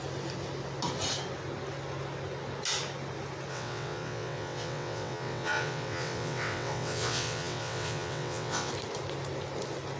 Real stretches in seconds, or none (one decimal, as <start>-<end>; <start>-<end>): 0.0-3.5; 8.7-10.0